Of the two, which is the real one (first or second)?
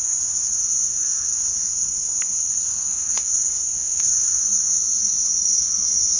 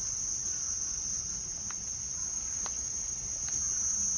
second